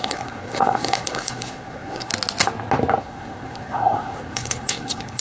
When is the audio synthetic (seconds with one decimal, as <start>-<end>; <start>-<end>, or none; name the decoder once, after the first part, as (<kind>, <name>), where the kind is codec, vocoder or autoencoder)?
0.0-2.1 (codec, SNAC); 3.0-5.2

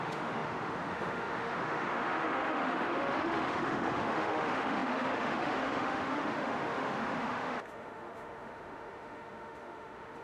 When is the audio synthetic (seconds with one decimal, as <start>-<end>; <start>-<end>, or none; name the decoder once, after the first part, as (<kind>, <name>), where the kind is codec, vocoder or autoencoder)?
0.0-10.2 (autoencoder, DAC-VAE)

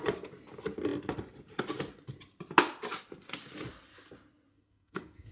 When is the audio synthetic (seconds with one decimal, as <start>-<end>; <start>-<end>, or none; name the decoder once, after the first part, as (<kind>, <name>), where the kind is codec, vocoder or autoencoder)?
4.5-5.3 (codec, SNAC)

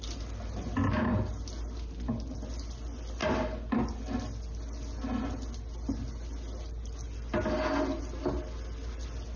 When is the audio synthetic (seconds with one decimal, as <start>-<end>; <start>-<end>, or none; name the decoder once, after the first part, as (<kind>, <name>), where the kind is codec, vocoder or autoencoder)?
none